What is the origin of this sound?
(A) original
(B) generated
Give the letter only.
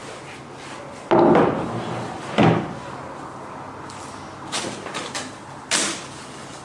A